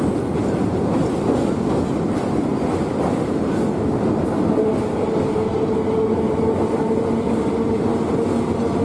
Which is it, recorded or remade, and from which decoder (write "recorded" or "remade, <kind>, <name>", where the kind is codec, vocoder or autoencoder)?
recorded